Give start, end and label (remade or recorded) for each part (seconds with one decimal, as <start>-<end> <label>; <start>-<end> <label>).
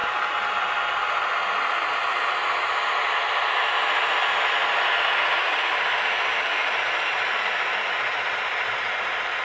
0.0-9.4 recorded